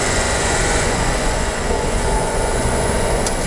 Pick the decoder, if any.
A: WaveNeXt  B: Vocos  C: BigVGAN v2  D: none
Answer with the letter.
B